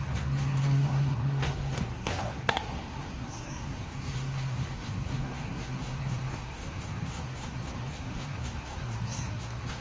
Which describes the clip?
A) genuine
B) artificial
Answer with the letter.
B